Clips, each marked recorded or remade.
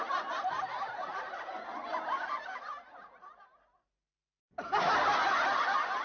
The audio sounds recorded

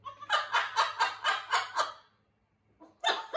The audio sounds recorded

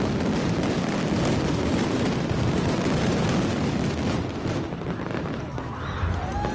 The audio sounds recorded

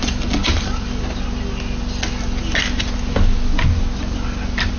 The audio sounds recorded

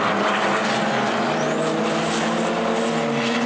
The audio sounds recorded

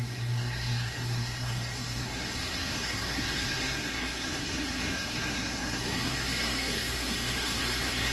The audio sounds remade